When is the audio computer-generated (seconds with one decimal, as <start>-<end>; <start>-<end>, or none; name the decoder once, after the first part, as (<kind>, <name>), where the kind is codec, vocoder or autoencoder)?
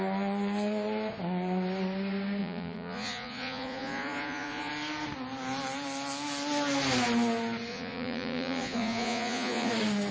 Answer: 2.4-4.7 (vocoder, Vocos); 7.7-9.7